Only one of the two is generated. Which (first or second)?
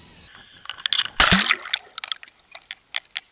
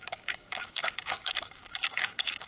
second